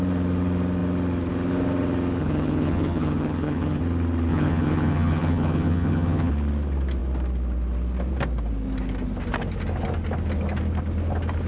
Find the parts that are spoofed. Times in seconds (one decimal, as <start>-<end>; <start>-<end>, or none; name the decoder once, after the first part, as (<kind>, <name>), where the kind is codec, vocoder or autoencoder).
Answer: 2.2-3.8 (vocoder, HiFi-GAN); 4.3-6.3